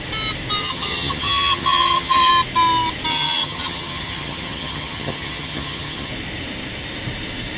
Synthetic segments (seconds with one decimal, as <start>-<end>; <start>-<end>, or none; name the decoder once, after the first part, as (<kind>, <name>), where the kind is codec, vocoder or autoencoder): 0.6-2.3 (vocoder, HiFi-GAN); 3.1-6.1